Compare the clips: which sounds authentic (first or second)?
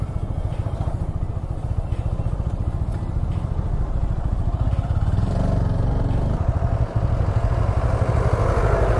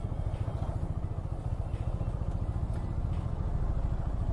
second